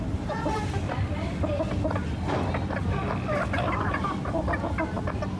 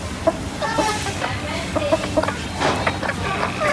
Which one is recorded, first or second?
second